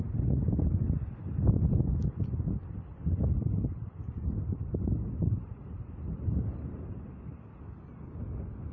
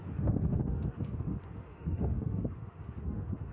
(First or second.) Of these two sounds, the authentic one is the first